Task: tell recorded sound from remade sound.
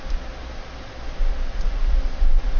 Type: recorded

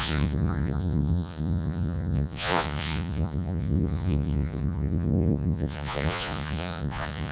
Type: remade